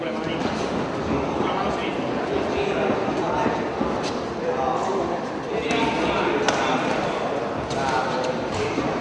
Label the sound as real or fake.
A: real